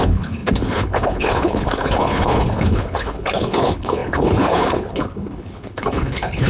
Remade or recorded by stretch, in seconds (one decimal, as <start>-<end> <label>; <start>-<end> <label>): 0.0-6.5 remade